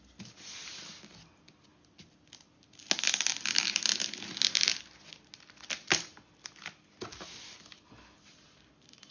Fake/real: real